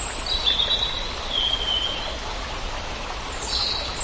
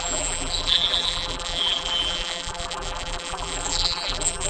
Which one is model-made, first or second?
second